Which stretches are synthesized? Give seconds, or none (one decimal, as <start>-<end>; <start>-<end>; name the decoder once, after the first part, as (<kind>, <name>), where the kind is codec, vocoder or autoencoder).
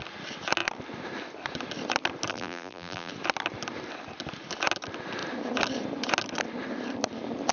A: 2.3-3.1 (vocoder, BigVGAN v2)